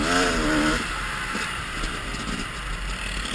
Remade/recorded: recorded